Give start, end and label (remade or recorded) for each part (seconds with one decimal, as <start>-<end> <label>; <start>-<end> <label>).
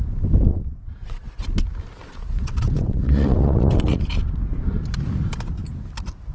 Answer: 0.0-0.5 recorded; 0.5-1.4 remade; 1.4-2.0 recorded; 2.0-4.1 remade; 4.1-6.3 recorded